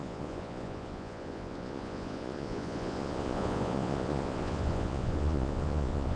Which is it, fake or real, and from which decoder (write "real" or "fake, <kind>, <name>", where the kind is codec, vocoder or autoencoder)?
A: fake, vocoder, Vocos